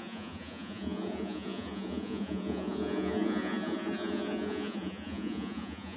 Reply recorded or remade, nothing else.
remade